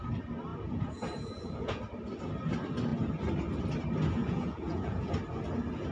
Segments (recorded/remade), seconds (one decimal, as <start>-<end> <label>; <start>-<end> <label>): 0.0-0.5 recorded; 0.5-1.8 remade; 1.8-4.2 recorded; 4.2-5.1 remade; 5.1-5.9 recorded